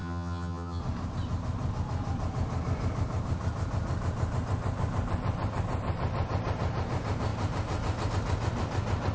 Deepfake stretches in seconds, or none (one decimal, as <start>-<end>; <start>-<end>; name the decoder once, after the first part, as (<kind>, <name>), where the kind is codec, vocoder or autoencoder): 0.0-0.8 (vocoder, HiFi-GAN)